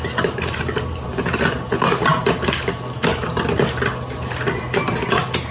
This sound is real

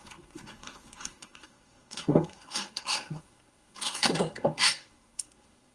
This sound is fake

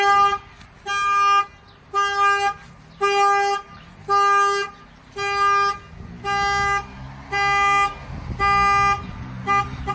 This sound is real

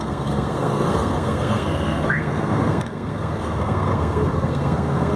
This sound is fake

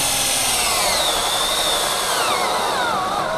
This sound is real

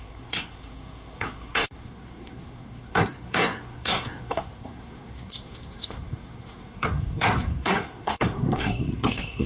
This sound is fake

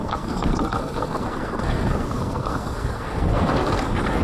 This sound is fake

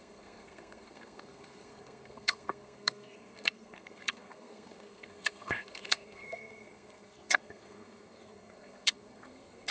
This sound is fake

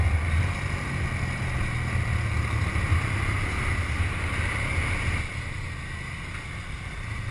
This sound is real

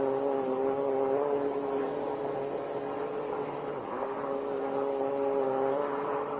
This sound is real